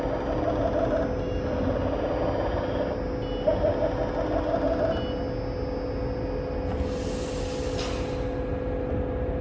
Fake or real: real